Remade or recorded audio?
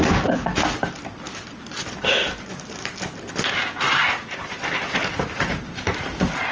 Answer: recorded